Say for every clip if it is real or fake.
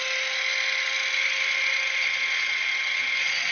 real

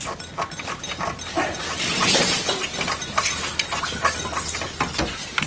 real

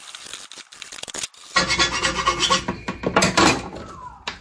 real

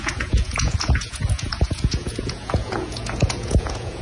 fake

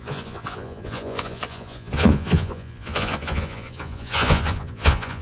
fake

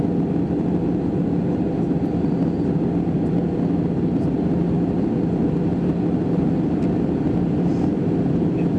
real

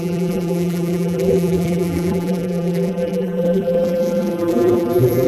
fake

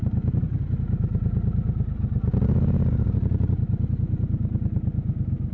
real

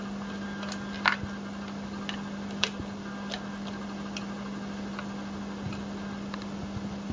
real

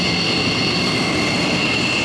real